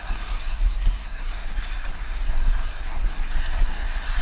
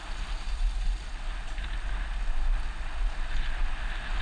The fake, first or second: first